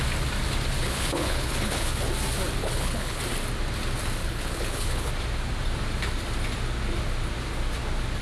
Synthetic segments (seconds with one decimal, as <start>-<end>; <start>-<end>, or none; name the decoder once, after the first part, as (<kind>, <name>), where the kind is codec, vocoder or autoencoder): 0.8-2.0 (codec, HILCodec); 2.6-3.2; 4.2-5.1